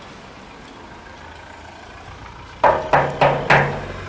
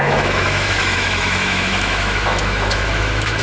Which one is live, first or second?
first